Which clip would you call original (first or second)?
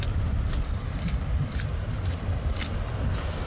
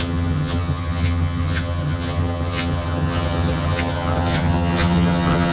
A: first